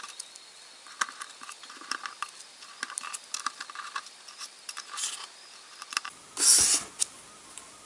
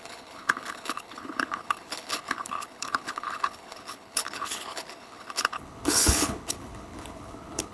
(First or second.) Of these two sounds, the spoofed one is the second